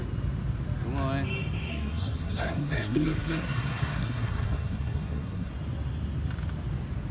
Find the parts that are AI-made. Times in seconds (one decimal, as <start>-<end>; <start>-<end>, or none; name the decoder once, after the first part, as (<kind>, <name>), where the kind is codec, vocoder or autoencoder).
1.7-5.5 (codec, SNAC)